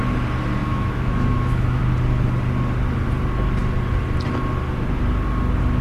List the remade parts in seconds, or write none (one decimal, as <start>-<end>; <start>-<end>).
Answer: 0.6-1.8